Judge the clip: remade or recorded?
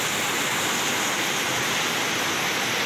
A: recorded